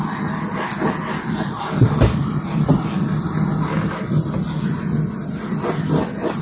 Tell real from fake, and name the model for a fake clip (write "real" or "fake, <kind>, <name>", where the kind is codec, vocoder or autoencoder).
real